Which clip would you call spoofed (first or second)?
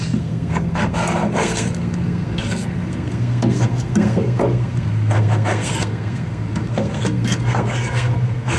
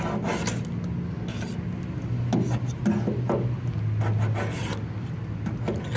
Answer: first